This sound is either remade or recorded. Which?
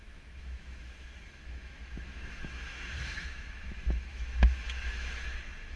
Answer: remade